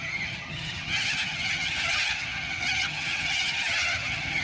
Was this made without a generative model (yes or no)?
no